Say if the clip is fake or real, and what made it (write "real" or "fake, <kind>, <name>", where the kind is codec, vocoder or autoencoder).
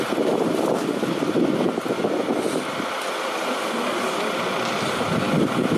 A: real